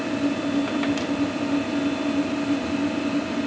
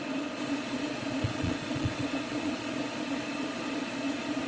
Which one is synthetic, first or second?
second